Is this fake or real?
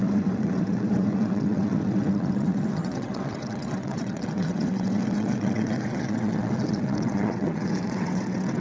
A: fake